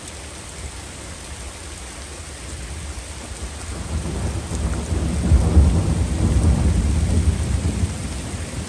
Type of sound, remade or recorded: recorded